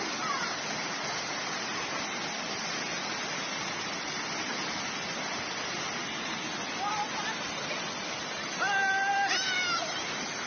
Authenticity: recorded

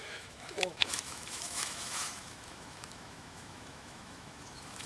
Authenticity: remade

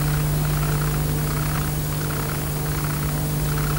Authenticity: recorded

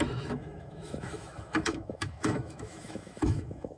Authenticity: remade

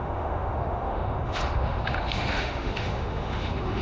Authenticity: remade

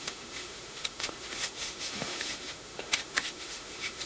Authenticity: remade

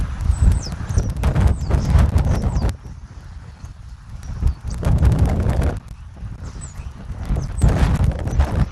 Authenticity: recorded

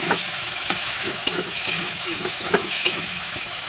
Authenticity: remade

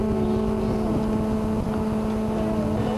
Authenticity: recorded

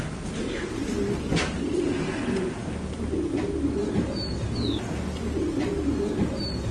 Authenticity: recorded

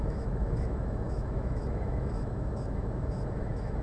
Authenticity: remade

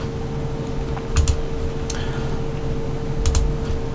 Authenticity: recorded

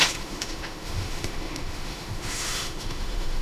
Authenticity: remade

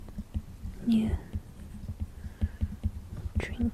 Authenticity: recorded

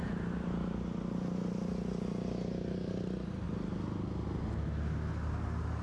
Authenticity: recorded